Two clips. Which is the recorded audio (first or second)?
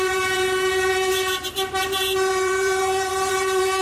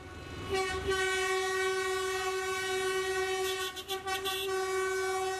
second